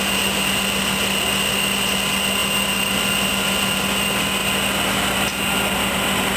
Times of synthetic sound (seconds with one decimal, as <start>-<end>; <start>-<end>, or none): none

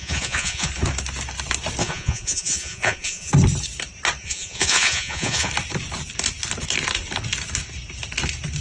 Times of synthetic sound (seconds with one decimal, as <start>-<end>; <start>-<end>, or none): 0.0-0.7; 1.8-3.3; 4.2-5.5

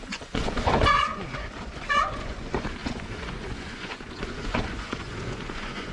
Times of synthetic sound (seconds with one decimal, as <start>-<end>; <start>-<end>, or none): 0.0-5.9

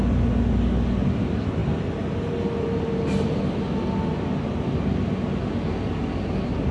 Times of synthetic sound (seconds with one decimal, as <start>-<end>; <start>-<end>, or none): none

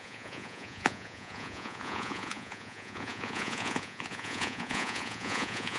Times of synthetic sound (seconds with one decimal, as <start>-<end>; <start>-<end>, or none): 0.0-5.8

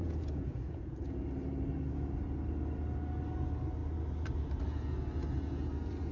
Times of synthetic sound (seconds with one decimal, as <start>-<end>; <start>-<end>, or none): 0.0-1.2

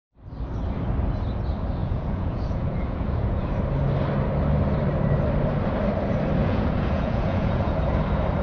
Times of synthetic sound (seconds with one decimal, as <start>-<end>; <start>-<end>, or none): 1.8-3.5; 6.4-7.9

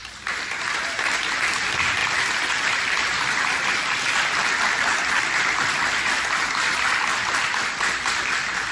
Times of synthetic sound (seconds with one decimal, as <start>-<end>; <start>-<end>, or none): none